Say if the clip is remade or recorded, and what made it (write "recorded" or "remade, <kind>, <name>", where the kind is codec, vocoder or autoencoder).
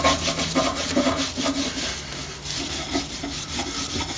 recorded